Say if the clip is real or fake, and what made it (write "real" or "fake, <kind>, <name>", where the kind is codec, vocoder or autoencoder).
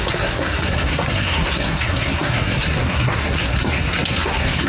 fake, codec, SNAC